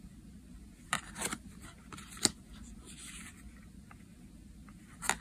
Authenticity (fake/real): real